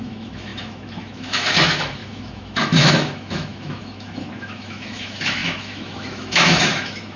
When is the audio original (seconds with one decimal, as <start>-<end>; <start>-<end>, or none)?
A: none